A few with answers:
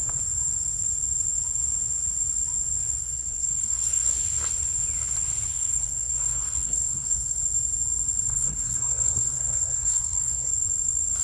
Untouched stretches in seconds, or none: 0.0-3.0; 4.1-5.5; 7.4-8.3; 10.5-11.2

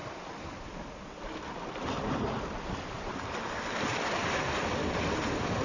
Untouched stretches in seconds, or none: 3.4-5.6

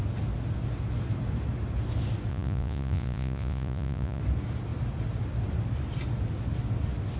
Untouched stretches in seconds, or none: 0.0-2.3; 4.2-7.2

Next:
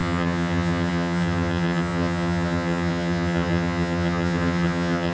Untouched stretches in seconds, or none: none

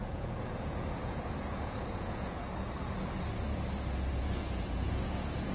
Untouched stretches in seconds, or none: 2.4-4.2

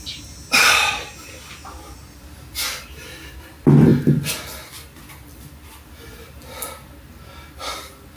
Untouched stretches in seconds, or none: 0.0-8.2